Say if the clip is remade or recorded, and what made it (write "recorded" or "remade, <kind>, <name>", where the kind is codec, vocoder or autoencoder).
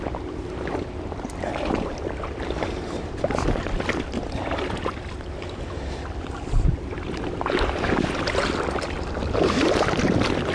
recorded